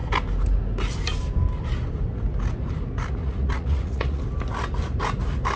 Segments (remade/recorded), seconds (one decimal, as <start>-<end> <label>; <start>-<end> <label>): 0.0-3.2 recorded; 3.2-4.2 remade; 4.2-5.6 recorded